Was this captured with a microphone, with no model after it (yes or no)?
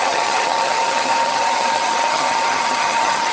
no